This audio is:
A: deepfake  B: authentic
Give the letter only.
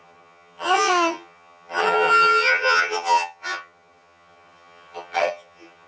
A